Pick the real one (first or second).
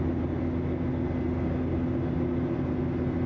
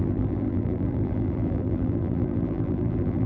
first